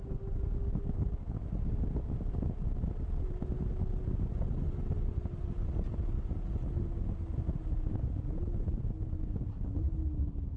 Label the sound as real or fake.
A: real